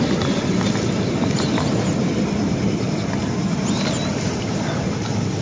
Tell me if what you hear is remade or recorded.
remade